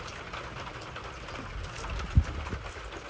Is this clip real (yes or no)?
yes